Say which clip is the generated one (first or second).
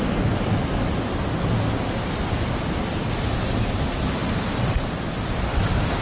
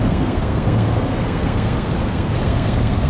second